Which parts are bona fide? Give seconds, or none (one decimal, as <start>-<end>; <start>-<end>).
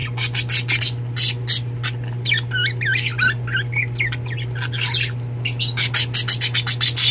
0.0-7.1